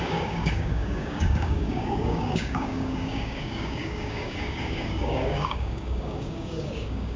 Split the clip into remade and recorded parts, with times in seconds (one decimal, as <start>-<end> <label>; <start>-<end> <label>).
0.0-7.2 remade